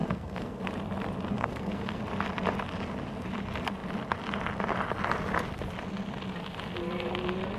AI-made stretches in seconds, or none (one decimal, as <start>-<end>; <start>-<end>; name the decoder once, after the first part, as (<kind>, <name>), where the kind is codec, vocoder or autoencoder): 0.0-0.6 (codec, SNAC); 1.3-2.0